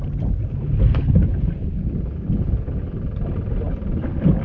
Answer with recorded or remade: recorded